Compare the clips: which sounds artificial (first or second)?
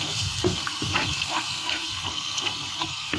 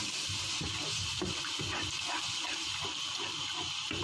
first